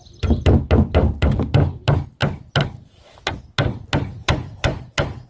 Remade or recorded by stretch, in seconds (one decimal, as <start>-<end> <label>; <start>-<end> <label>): 0.0-4.2 recorded; 4.2-4.8 remade; 4.8-5.3 recorded